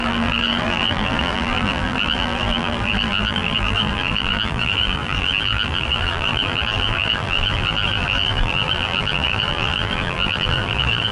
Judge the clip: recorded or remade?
remade